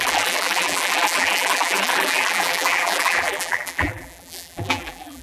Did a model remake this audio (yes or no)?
yes